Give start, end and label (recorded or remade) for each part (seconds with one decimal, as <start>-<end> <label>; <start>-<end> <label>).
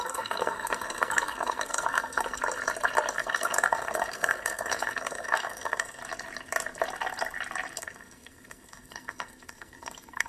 0.0-2.4 remade; 2.4-3.1 recorded; 3.1-6.0 remade; 6.0-7.8 recorded; 7.8-10.3 remade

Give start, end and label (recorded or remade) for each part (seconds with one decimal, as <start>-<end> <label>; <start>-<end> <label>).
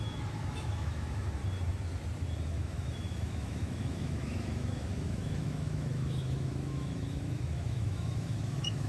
0.0-1.4 remade; 1.4-2.5 recorded; 2.5-8.9 remade